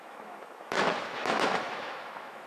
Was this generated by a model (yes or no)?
yes